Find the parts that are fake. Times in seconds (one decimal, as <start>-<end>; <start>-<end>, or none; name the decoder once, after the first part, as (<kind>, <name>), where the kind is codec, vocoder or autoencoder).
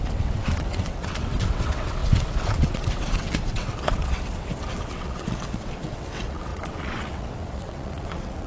0.0-8.5 (vocoder, WaveNeXt)